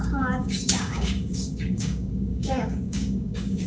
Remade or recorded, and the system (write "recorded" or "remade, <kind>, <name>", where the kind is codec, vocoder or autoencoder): remade, codec, DAC